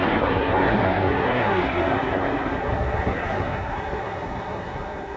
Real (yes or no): no